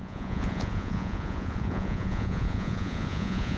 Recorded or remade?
remade